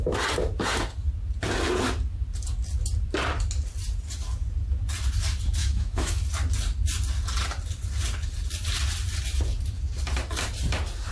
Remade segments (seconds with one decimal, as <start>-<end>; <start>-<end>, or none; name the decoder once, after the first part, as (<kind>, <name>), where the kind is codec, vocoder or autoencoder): 5.6-6.2 (autoencoder, DAC-VAE)